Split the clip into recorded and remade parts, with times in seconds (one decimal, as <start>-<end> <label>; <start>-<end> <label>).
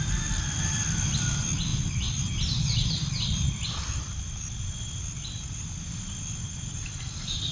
0.0-7.5 recorded